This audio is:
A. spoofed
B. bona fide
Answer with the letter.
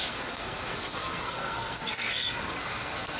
A